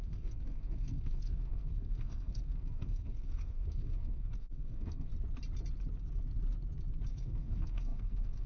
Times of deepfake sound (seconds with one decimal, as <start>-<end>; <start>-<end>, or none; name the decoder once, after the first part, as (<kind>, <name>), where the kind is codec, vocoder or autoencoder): 0.0-5.1 (codec, SNAC); 7.1-8.5